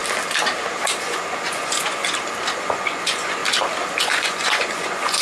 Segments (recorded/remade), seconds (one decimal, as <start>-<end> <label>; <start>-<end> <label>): 0.0-1.0 recorded; 1.0-2.0 remade; 2.0-2.6 recorded; 2.6-3.4 remade; 3.4-4.0 recorded; 4.0-5.2 remade